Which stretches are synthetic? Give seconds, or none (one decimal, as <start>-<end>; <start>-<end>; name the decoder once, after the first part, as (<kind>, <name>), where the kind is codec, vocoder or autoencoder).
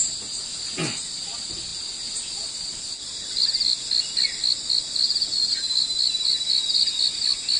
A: none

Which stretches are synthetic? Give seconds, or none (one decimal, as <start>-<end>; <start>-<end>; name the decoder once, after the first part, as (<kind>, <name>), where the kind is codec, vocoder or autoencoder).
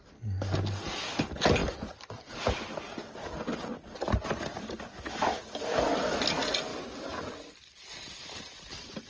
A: none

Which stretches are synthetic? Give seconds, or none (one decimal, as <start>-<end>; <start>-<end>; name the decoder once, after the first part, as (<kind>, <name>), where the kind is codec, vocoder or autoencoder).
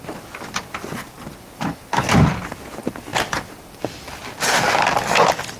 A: none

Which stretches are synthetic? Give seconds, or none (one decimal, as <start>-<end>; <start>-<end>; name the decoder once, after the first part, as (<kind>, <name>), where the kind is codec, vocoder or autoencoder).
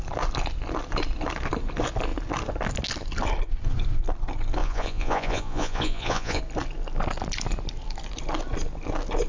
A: 4.6-6.4 (vocoder, Vocos)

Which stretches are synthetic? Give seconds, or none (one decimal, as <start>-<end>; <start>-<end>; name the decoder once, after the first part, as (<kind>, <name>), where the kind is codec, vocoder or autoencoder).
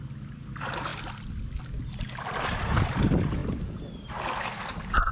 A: none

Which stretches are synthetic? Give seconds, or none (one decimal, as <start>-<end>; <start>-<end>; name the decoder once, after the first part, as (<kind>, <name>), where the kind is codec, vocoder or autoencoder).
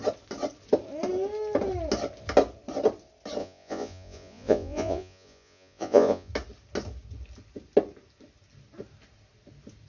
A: 3.4-6.3 (vocoder, Vocos)